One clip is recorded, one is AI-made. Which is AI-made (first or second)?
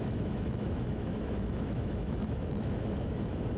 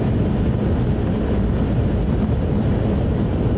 first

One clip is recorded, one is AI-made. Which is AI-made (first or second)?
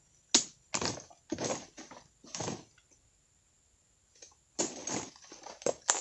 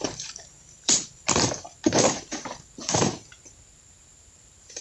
second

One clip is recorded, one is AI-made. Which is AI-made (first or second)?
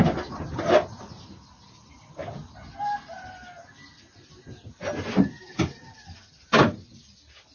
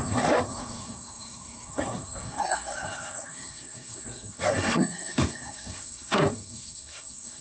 second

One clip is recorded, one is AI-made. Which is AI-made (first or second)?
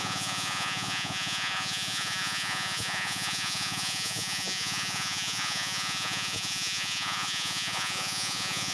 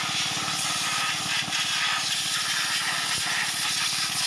first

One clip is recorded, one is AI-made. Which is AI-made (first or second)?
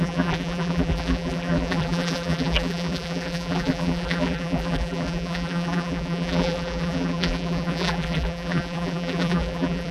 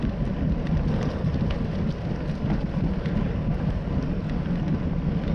first